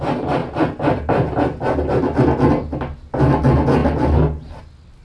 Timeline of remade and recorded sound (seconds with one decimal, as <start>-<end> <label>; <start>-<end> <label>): 0.0-5.0 recorded